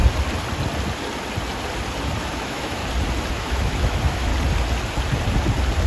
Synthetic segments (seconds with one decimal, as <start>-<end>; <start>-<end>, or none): 2.2-2.8; 3.3-4.3